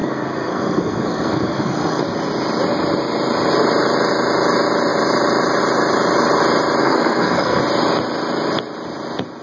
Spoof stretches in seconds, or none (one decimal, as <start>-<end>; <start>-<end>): 0.0-2.0; 6.8-7.6